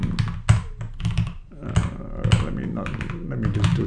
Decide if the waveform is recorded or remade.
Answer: recorded